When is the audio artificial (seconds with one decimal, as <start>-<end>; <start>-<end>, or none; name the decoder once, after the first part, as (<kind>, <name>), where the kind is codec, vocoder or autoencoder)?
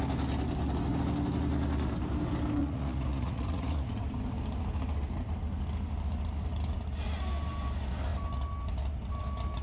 2.6-3.9 (vocoder, Vocos)